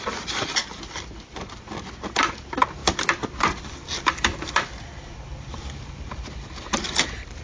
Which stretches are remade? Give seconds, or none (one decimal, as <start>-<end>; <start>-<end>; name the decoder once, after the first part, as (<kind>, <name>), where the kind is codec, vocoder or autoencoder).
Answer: 0.6-1.6 (vocoder, BigVGAN v2); 2.8-7.4